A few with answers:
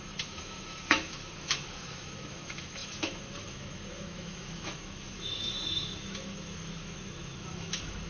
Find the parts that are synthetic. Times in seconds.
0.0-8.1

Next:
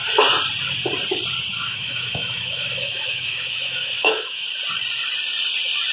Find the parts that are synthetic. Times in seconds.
1.5-4.5